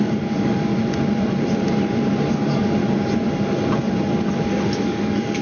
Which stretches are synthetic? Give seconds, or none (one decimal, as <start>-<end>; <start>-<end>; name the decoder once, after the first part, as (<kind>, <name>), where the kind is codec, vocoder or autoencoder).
0.0-0.7 (codec, DAC); 2.3-2.8; 4.8-5.4